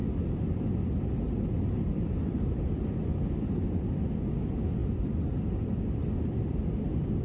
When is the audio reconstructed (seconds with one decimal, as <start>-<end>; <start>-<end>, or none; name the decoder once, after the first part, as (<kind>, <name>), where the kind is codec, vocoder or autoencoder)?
0.0-4.3 (vocoder, BigVGAN v2); 4.8-6.8